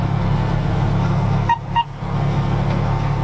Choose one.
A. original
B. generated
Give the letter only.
B